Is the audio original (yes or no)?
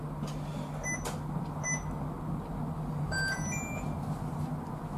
yes